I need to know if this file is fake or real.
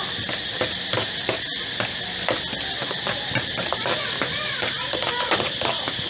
real